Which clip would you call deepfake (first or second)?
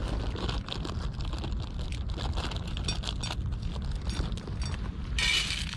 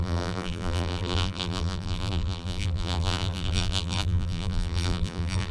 second